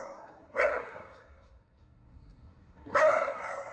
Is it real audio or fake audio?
fake